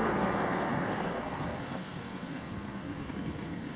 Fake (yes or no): yes